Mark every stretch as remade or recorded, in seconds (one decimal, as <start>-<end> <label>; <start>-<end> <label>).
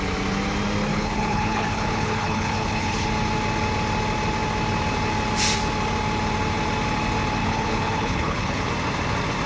0.0-0.9 recorded; 0.9-3.1 remade; 3.1-7.4 recorded; 7.4-8.7 remade; 8.7-9.5 recorded